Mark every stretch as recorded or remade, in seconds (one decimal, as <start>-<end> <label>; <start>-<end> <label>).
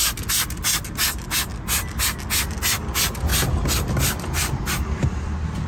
0.0-3.3 recorded; 3.3-4.6 remade; 4.6-5.7 recorded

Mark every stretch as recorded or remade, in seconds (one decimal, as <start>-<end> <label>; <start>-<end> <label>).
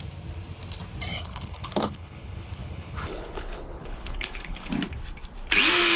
0.0-1.1 recorded; 1.1-4.7 remade; 4.7-6.0 recorded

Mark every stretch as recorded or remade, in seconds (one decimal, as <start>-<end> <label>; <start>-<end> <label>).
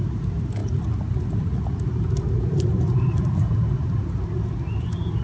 0.0-5.2 recorded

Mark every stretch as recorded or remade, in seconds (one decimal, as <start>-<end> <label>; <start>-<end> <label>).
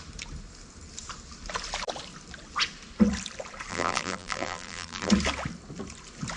0.0-3.7 recorded; 3.7-5.1 remade; 5.1-6.4 recorded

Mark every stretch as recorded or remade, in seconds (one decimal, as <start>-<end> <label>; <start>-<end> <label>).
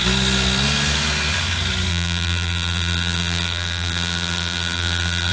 0.0-1.9 recorded; 1.9-5.3 remade